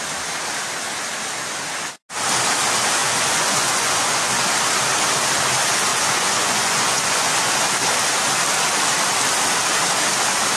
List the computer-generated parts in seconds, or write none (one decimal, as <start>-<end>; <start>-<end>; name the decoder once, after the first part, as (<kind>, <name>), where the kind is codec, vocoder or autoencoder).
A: 3.0-4.3 (vocoder, Vocos); 5.9-7.5